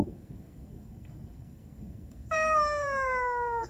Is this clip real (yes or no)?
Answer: no